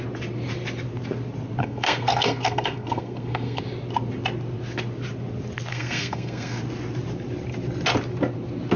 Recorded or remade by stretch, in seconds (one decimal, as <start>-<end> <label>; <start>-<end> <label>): 0.0-1.6 recorded; 1.6-3.6 remade; 3.6-5.7 recorded; 5.7-6.6 remade; 6.6-8.8 recorded